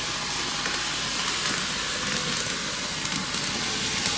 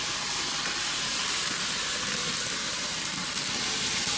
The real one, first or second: first